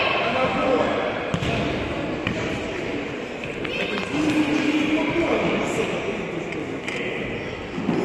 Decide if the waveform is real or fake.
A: real